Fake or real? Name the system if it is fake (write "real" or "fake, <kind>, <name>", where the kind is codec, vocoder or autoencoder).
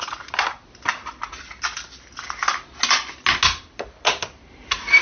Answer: real